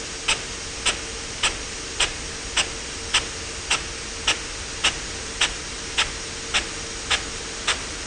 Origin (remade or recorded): recorded